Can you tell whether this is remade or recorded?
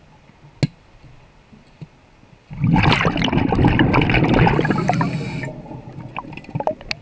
recorded